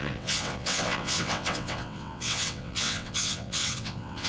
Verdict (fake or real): fake